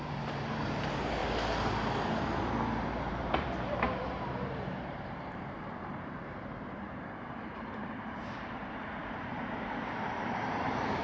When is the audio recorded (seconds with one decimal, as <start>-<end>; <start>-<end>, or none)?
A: 1.2-3.1